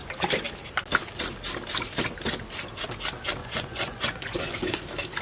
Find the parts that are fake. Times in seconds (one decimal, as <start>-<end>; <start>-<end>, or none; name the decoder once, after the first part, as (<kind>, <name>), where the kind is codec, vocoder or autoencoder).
3.4-4.8 (vocoder, Vocos)